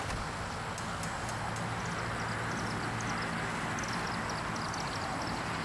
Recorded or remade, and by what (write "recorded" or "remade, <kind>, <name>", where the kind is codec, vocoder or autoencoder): recorded